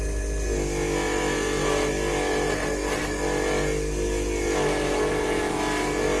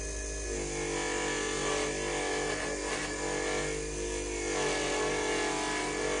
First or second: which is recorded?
second